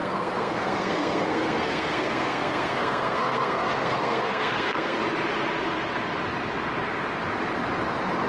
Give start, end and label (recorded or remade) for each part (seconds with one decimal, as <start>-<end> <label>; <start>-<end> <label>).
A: 0.0-5.0 remade; 5.0-8.3 recorded